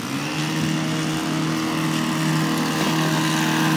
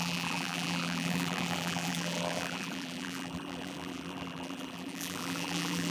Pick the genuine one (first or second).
first